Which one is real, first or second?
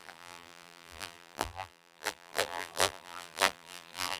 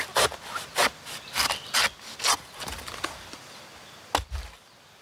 second